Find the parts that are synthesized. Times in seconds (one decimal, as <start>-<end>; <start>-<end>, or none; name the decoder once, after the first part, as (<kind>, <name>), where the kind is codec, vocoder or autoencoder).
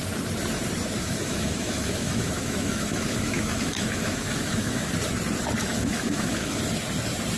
1.0-4.9 (autoencoder, DAC-VAE); 5.6-6.6